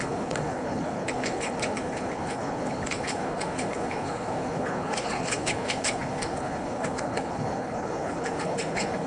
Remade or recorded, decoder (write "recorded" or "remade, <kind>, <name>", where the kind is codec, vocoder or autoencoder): remade, codec, HILCodec